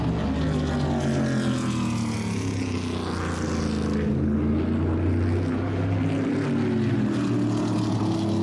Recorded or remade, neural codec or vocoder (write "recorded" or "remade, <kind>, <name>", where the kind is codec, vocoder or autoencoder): recorded